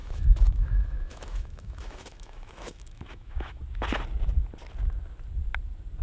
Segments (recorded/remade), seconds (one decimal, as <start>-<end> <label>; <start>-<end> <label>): 0.0-3.6 remade; 3.6-6.0 recorded